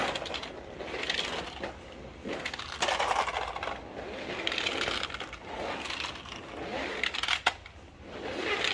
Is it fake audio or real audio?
real